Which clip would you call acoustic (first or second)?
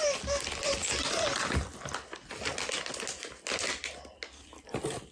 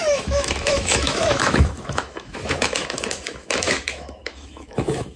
first